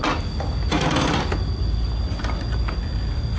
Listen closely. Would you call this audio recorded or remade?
recorded